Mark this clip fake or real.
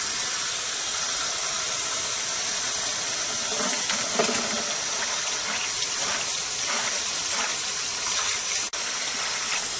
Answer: real